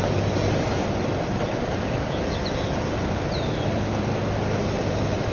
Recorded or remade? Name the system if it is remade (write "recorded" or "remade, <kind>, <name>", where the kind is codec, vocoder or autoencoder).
recorded